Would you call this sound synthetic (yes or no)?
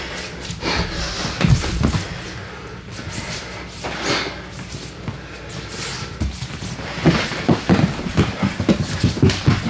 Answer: no